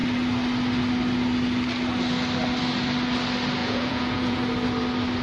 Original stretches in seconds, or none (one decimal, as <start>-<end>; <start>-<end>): 0.0-3.6; 4.4-5.2